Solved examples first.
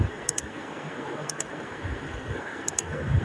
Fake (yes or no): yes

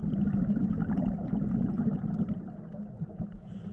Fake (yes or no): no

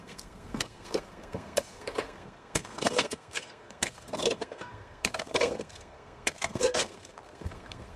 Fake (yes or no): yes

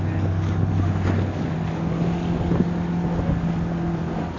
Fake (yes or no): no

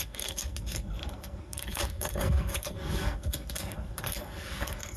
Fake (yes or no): yes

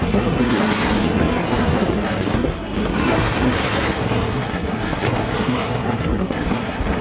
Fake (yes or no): yes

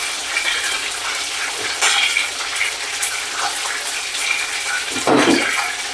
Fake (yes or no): no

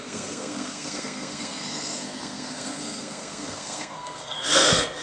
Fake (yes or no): yes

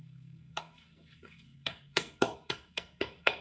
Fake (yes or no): yes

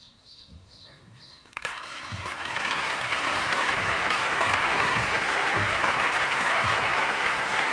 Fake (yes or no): yes